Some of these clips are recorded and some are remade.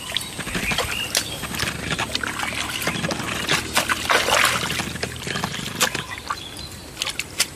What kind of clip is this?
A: recorded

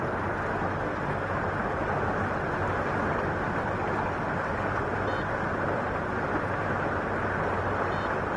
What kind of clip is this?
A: recorded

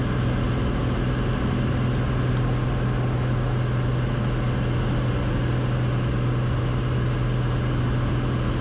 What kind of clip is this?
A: recorded